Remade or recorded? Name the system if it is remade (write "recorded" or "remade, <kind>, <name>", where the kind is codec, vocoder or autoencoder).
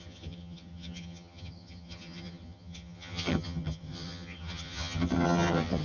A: remade, vocoder, HiFi-GAN